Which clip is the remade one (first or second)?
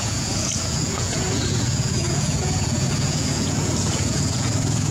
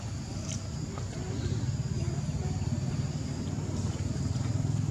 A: first